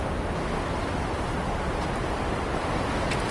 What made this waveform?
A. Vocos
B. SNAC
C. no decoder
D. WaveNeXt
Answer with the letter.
C